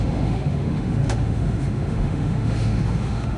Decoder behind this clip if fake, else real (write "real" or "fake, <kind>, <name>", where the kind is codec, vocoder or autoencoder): fake, autoencoder, DAC-VAE